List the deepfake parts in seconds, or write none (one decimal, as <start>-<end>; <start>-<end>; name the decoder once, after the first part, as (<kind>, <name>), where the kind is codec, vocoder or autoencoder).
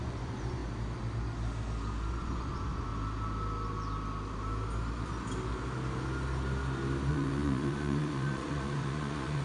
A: 0.0-0.6 (vocoder, Vocos); 2.1-2.9; 7.1-9.4